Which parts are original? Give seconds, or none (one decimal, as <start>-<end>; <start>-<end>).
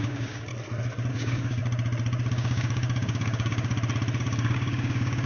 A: 0.5-1.1; 1.6-2.3; 3.7-4.2